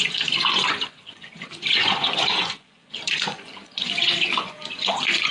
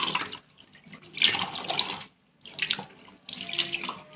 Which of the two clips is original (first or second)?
second